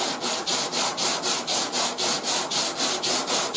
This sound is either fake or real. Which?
real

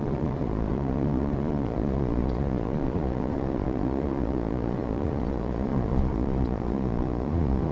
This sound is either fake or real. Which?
fake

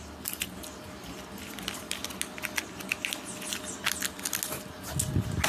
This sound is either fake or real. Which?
real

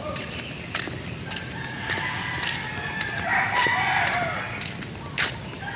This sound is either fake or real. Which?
real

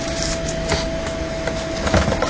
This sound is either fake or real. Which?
real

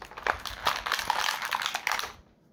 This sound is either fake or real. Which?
real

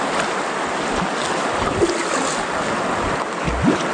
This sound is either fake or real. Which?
real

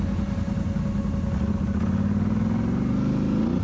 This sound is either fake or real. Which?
real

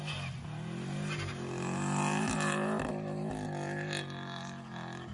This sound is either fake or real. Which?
real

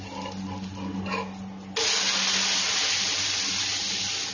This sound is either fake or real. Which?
real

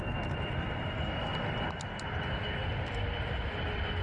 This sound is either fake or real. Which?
fake